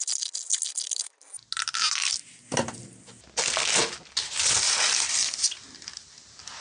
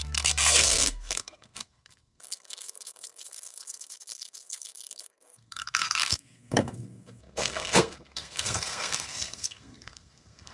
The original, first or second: first